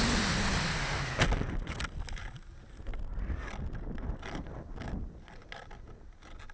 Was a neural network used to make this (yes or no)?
no